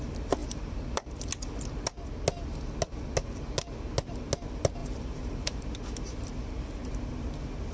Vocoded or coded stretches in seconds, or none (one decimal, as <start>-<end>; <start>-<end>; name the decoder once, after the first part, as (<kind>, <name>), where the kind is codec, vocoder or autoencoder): 0.4-1.2 (vocoder, BigVGAN v2); 4.8-5.6